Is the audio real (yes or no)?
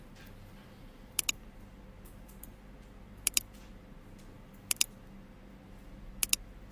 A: yes